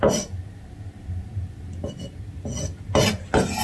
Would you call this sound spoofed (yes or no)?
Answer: no